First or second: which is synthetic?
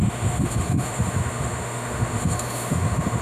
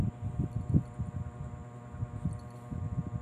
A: first